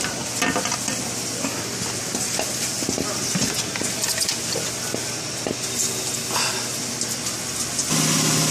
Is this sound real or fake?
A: real